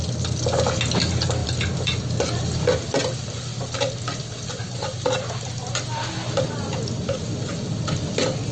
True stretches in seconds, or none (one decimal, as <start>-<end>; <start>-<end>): 0.0-1.4; 2.0-8.5